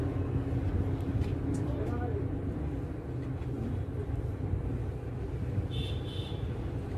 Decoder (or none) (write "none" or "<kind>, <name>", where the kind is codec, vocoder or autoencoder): none